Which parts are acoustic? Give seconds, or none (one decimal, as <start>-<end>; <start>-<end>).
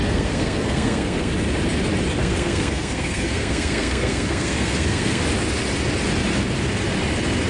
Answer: 1.3-2.2; 5.2-7.5